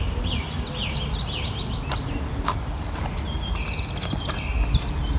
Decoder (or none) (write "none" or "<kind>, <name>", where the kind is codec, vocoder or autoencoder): none